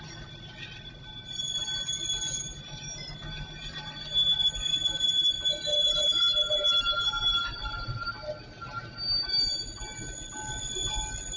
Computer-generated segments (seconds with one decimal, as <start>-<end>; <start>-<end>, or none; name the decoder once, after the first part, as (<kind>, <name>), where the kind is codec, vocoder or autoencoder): 5.7-6.2 (vocoder, BigVGAN v2)